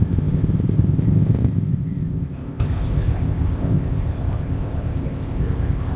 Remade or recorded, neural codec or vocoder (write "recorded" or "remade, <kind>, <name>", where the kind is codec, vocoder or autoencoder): remade, codec, ZipCodec